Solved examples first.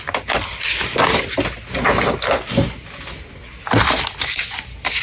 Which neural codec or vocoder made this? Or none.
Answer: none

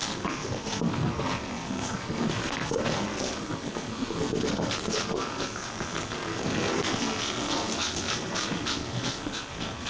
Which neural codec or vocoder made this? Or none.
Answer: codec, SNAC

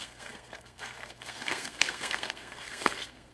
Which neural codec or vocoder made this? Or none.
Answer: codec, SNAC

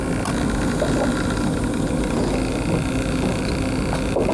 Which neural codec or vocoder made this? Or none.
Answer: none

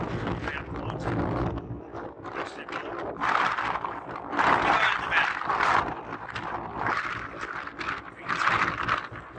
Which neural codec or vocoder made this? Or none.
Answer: none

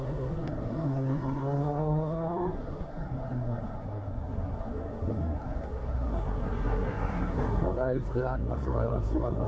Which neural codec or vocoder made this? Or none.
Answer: codec, SNAC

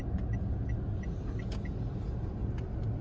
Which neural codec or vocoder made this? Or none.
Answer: none